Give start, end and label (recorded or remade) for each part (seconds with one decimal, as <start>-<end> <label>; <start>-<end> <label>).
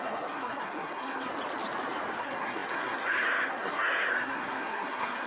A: 0.0-1.3 remade; 1.3-2.2 recorded; 2.2-5.3 remade